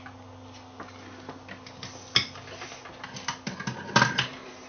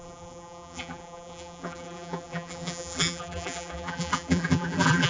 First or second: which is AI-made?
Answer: second